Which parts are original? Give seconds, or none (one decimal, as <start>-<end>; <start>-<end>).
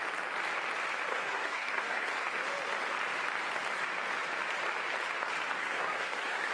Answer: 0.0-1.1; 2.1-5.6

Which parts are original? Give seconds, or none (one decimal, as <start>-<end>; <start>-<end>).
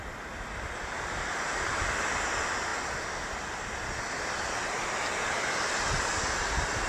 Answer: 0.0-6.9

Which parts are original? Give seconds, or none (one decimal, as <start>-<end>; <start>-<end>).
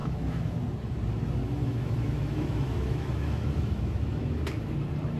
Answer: 0.6-1.6; 4.7-5.2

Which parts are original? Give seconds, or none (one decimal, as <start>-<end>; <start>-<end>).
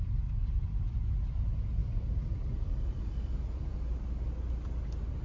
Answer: 0.0-5.2